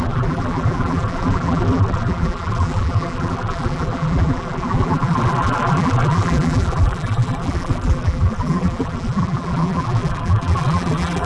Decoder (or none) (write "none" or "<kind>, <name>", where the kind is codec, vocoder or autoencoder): vocoder, BigVGAN v2